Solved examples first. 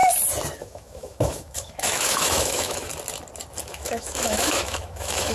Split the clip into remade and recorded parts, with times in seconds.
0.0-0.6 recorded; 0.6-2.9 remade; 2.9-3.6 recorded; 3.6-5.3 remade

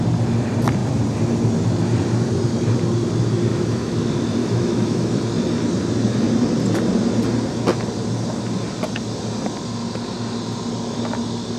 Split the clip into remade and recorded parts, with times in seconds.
0.0-3.5 recorded; 3.5-4.0 remade; 4.0-4.4 recorded; 4.4-5.2 remade; 5.2-11.6 recorded

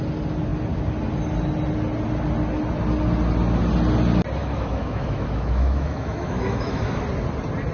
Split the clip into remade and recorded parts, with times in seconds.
0.0-4.4 recorded; 4.4-7.0 remade; 7.0-7.7 recorded

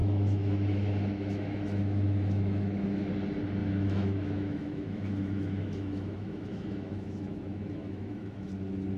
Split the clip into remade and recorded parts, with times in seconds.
0.0-3.1 remade; 3.1-3.6 recorded; 3.6-8.5 remade; 8.5-9.0 recorded